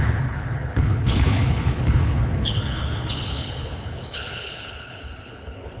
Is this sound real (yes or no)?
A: no